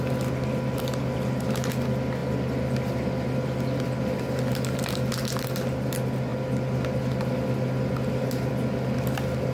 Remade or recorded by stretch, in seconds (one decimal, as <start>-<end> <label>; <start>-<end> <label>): 0.0-9.5 recorded